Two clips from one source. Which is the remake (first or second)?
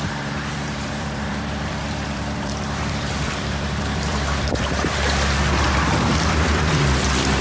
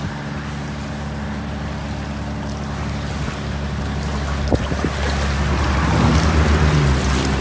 first